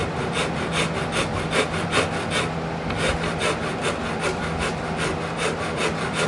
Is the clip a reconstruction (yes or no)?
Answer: no